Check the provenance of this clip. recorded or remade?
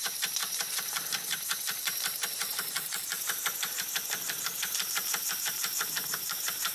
remade